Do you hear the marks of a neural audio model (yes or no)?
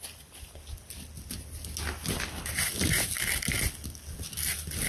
no